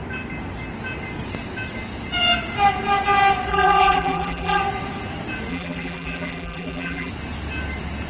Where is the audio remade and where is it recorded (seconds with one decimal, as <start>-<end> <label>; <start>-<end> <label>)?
0.0-3.5 recorded; 3.5-4.6 remade; 4.6-5.5 recorded; 5.5-7.1 remade; 7.1-8.1 recorded